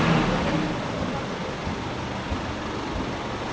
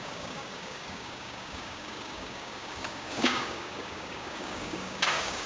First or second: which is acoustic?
first